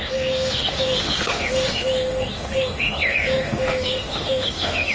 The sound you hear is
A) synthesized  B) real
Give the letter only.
A